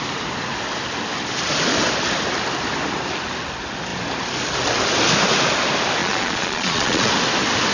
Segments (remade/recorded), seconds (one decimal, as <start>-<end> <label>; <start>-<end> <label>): 0.0-6.0 recorded; 6.0-7.1 remade; 7.1-7.7 recorded